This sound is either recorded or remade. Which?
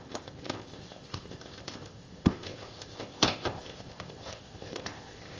remade